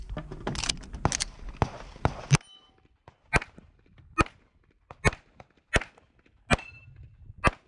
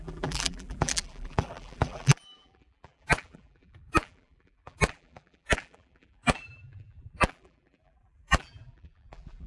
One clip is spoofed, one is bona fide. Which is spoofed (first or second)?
second